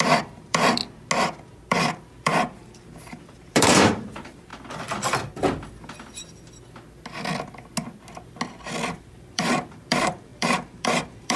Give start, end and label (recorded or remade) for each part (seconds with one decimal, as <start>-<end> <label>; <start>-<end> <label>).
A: 0.0-0.8 remade; 0.8-1.7 recorded; 1.7-4.5 remade; 4.5-9.0 recorded; 9.0-11.4 remade